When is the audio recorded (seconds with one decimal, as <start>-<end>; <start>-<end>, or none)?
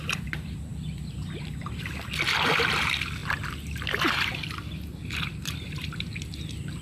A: 0.0-6.8